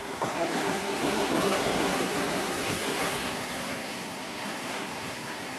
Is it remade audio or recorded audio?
remade